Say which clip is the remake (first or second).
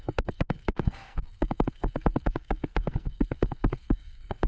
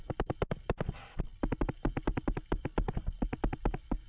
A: first